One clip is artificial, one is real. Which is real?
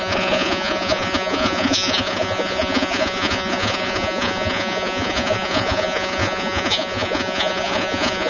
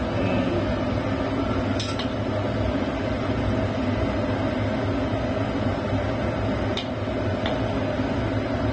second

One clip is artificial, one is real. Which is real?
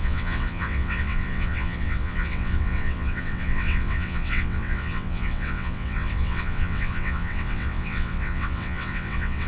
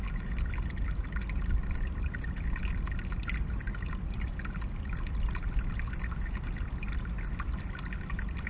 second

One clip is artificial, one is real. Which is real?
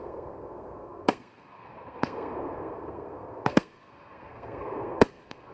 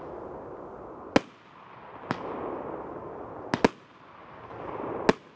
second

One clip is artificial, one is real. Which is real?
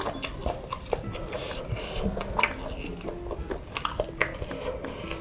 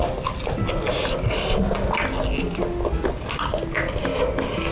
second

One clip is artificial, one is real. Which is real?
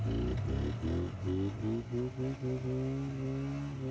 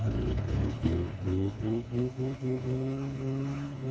first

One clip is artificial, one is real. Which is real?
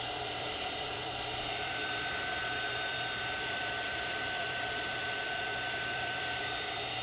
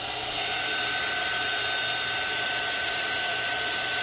second